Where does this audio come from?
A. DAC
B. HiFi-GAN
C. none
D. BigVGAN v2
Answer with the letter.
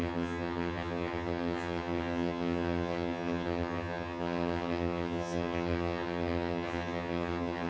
B